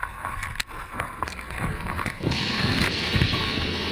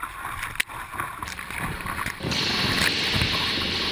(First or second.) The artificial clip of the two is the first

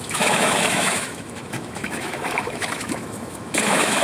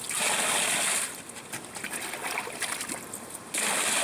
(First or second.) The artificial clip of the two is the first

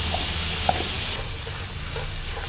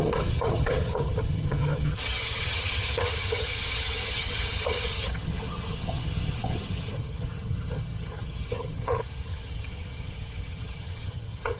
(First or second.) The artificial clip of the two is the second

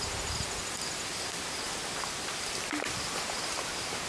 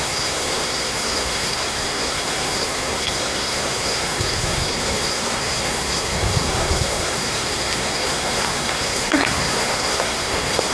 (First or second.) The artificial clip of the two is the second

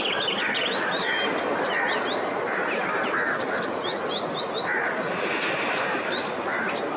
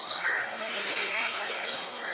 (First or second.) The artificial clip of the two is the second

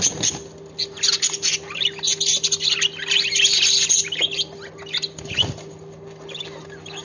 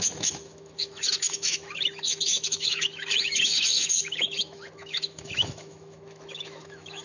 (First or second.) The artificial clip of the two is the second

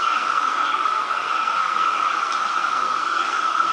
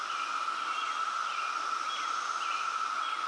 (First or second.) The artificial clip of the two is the first